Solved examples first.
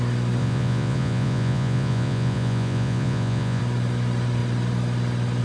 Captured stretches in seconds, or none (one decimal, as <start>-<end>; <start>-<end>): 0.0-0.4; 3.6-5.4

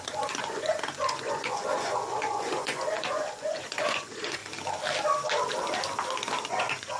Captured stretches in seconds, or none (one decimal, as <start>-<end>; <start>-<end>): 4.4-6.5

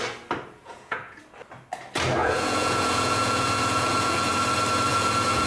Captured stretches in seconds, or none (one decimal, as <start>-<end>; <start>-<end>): 0.0-0.6; 1.2-2.2; 4.3-4.9